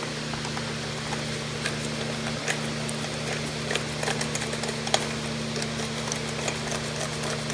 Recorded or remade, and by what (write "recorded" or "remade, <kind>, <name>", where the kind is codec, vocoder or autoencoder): recorded